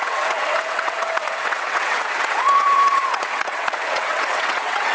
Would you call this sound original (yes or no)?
no